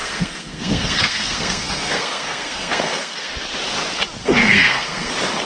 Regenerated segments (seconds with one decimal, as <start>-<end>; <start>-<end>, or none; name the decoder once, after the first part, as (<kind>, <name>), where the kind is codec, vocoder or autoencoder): 0.0-3.3 (codec, SNAC); 4.2-5.1